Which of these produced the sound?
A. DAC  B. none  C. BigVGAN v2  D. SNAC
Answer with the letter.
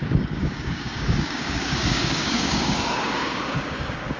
A